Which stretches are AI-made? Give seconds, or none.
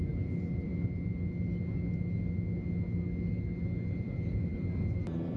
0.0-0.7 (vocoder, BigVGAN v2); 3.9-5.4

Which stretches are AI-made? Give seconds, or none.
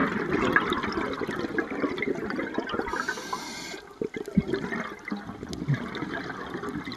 none